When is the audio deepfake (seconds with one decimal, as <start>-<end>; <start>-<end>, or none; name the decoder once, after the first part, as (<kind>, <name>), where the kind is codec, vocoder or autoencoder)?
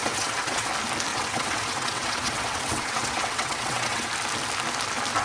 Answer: 0.0-0.7 (vocoder, WaveNeXt); 1.1-4.1